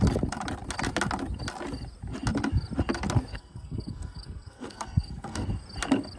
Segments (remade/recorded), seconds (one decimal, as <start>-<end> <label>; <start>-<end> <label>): 0.0-3.3 recorded; 3.3-5.5 remade; 5.5-6.2 recorded